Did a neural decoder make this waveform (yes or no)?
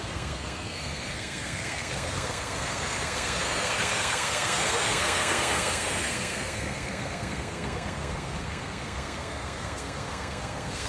yes